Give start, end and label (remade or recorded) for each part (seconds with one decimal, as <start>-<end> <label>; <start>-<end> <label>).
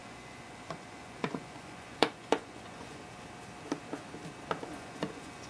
0.0-3.0 remade; 3.0-4.7 recorded; 4.7-5.5 remade